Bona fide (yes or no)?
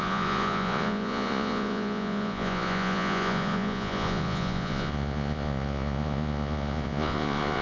no